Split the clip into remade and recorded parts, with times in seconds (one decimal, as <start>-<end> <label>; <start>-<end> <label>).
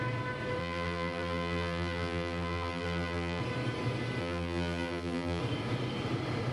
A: 0.0-0.6 recorded; 0.6-3.4 remade; 3.4-4.2 recorded; 4.2-5.4 remade; 5.4-6.5 recorded